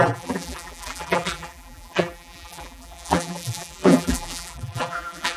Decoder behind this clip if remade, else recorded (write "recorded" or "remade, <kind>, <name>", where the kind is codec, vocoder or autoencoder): remade, vocoder, BigVGAN v2